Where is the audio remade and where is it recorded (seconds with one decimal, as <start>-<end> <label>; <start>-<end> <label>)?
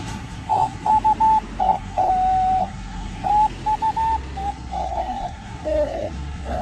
0.0-0.9 remade; 0.9-1.6 recorded; 1.6-2.1 remade; 2.1-2.6 recorded; 2.6-3.3 remade; 3.3-4.5 recorded; 4.5-6.6 remade